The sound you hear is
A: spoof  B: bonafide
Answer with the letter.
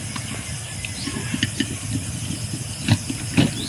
B